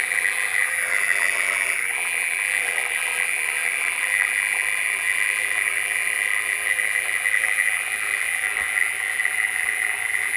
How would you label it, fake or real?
fake